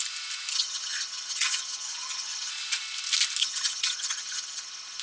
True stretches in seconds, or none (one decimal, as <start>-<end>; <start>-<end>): 0.0-0.5; 2.5-3.4